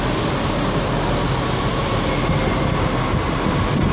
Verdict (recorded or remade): recorded